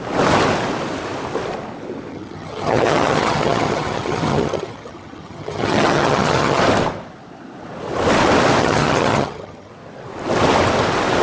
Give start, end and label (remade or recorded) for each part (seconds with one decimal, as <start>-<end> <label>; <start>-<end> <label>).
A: 0.0-2.1 recorded; 2.1-6.6 remade; 6.6-8.6 recorded; 8.6-9.7 remade; 9.7-11.2 recorded